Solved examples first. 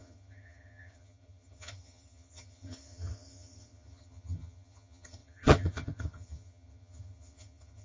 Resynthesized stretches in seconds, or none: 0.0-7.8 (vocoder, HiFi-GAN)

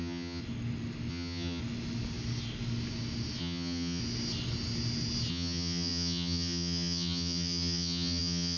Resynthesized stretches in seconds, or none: 0.0-0.4 (vocoder, HiFi-GAN); 1.1-1.6; 3.4-4.0; 5.3-8.6

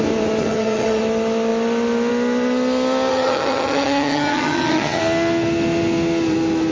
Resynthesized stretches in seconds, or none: 0.4-1.0 (vocoder, HiFi-GAN); 3.1-5.0

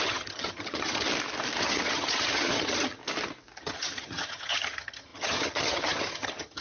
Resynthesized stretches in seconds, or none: 0.0-1.1 (vocoder, HiFi-GAN); 1.6-3.0; 3.6-6.6